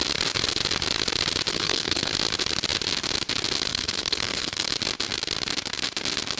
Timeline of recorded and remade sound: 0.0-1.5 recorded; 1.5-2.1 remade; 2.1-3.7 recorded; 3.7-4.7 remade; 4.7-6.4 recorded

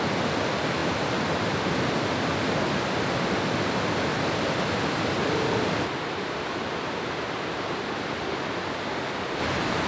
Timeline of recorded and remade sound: 0.0-9.9 recorded

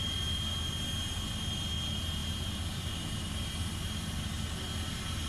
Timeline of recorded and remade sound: 0.0-2.2 recorded; 2.2-2.9 remade; 2.9-5.3 recorded

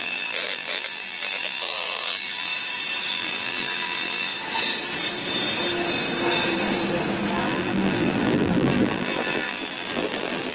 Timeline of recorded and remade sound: 0.0-2.5 remade; 2.5-3.1 recorded; 3.1-4.3 remade; 4.3-7.3 recorded; 7.3-10.5 remade